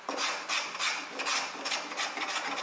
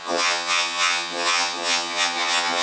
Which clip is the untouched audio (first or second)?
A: first